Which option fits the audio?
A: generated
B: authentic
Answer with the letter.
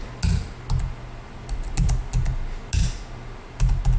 B